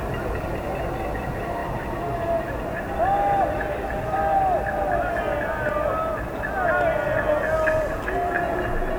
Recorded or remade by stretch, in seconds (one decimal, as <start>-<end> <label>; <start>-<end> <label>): 0.0-9.0 recorded